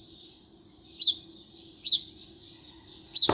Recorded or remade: recorded